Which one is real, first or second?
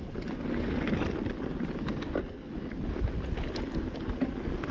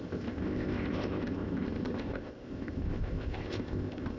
first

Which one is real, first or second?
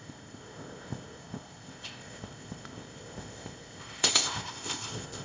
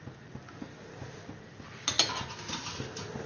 second